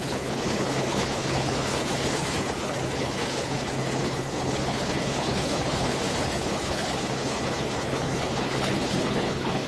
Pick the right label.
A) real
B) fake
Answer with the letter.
B